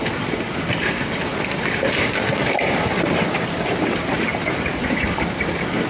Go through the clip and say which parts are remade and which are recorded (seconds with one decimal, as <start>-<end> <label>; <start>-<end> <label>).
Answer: 0.0-1.3 recorded; 1.3-1.8 remade; 1.8-5.9 recorded